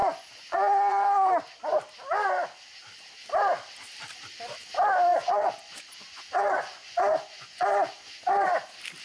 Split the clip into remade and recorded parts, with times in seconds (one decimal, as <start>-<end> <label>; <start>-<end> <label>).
0.0-1.3 remade; 1.3-5.1 recorded; 5.1-8.2 remade; 8.2-9.0 recorded